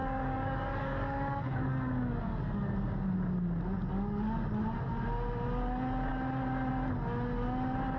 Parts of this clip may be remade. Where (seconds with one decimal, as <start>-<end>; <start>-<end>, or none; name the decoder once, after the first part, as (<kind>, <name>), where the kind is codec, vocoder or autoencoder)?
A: 0.0-2.2 (codec, DAC); 3.9-4.5